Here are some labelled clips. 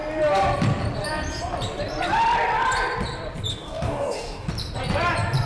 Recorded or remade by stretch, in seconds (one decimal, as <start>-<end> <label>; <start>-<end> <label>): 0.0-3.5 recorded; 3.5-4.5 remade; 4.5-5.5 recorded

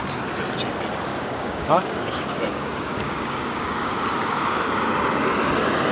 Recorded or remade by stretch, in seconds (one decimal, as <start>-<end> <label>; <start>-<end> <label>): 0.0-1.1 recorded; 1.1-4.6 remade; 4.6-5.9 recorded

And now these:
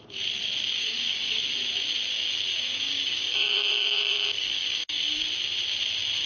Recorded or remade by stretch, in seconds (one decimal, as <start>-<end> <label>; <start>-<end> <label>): 0.0-0.8 recorded; 0.8-1.4 remade; 1.4-2.5 recorded; 2.5-5.2 remade; 5.2-6.3 recorded

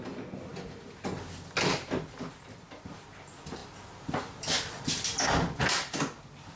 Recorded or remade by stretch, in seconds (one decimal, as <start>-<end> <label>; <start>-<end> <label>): 0.0-6.6 recorded

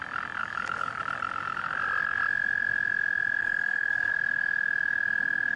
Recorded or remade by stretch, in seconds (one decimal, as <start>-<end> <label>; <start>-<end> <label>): 0.0-0.4 recorded; 0.4-1.0 remade; 1.0-3.4 recorded; 3.4-4.1 remade; 4.1-5.6 recorded